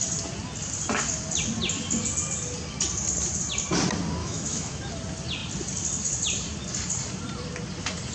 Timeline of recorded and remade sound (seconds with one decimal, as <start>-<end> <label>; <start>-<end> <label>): 0.0-4.2 recorded; 4.2-4.8 remade; 4.8-8.1 recorded